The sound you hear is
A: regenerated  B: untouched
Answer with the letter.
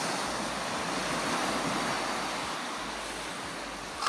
B